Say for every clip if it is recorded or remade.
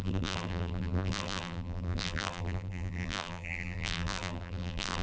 remade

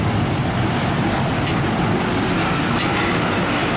recorded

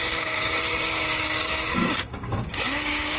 remade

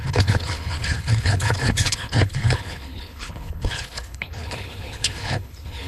remade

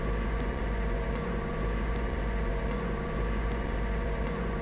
remade